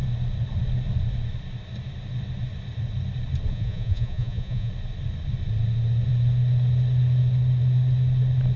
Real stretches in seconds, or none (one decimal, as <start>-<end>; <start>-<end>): 0.0-3.5; 4.7-8.6